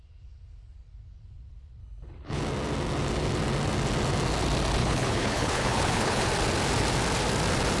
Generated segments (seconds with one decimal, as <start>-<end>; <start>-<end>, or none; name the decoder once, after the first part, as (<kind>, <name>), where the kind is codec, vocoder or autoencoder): 1.8-2.4 (codec, HILCodec); 4.8-6.3